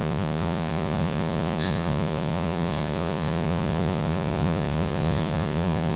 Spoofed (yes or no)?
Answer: yes